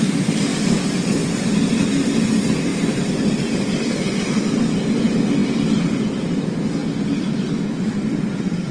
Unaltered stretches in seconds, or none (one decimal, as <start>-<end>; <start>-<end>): 0.0-2.7; 4.4-8.7